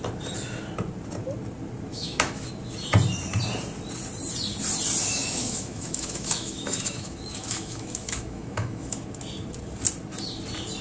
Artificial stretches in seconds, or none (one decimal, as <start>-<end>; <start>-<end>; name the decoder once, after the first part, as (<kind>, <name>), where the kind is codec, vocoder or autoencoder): 1.9-2.5 (autoencoder, DAC-VAE); 5.0-9.0